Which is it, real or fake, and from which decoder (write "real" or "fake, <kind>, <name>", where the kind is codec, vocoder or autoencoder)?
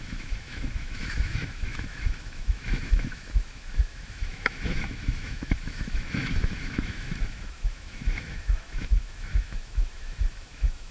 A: fake, autoencoder, DAC-VAE